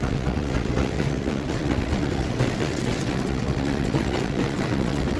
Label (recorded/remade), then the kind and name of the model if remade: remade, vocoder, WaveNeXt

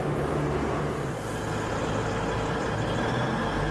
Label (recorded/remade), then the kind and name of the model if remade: recorded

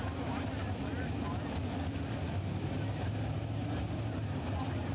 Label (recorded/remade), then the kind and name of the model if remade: recorded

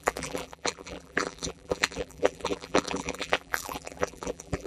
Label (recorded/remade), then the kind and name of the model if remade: remade, vocoder, BigVGAN v2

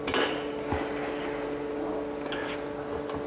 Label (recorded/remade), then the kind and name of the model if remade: recorded